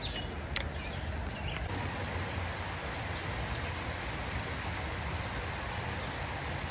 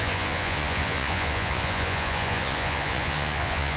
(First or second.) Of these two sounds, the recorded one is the first